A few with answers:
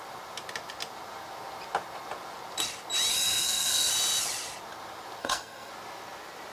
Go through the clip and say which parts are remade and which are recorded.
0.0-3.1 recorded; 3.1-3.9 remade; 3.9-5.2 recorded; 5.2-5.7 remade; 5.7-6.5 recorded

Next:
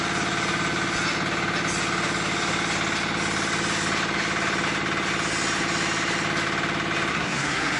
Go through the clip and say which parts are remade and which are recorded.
0.0-7.1 recorded; 7.1-7.8 remade

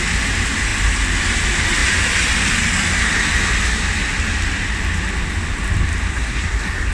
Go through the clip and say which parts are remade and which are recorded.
0.0-6.1 recorded; 6.1-6.9 remade